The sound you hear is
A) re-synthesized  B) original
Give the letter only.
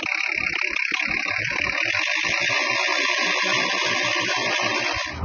B